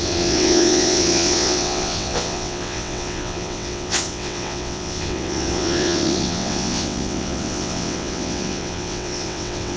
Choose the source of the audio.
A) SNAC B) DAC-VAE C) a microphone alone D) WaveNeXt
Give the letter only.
D